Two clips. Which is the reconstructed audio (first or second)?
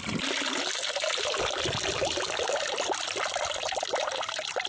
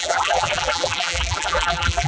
second